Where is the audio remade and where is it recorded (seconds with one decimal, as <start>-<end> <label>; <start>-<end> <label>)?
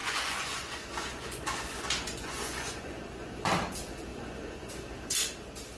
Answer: 0.0-3.5 remade; 3.5-4.1 recorded; 4.1-4.7 remade; 4.7-5.8 recorded